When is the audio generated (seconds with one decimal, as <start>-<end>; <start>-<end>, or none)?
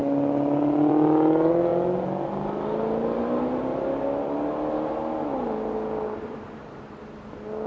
none